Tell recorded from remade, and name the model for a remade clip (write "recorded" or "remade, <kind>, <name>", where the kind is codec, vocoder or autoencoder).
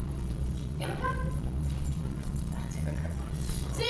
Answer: remade, vocoder, Vocos